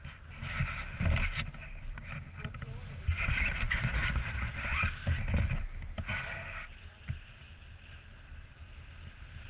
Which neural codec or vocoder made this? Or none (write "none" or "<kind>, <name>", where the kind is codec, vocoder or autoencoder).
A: none